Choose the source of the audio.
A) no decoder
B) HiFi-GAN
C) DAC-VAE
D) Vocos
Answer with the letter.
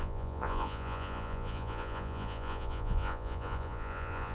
D